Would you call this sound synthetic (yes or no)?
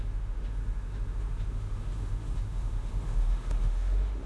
yes